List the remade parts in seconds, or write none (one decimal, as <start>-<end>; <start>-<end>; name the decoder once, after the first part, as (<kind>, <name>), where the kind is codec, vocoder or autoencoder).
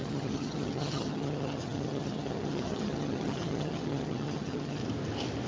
0.0-4.8 (vocoder, HiFi-GAN)